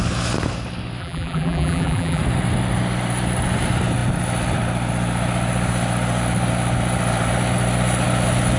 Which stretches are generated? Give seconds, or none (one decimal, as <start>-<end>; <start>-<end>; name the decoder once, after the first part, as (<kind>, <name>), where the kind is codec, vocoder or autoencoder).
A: 1.0-2.2 (vocoder, BigVGAN v2)